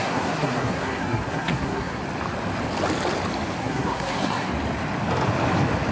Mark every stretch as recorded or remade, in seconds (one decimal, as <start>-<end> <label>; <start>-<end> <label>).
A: 0.0-2.0 remade; 2.0-3.6 recorded; 3.6-4.5 remade; 4.5-5.9 recorded